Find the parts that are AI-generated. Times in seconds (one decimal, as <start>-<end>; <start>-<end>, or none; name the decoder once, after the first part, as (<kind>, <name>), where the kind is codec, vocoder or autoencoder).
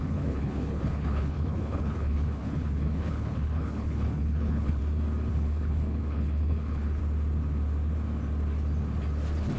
0.0-4.8 (codec, HILCodec); 5.3-7.0